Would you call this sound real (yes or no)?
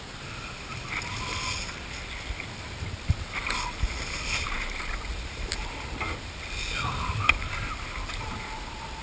yes